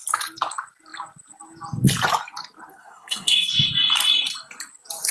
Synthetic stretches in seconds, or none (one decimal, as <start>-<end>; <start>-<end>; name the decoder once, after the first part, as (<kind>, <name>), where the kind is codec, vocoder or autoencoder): 2.7-3.5 (codec, SNAC)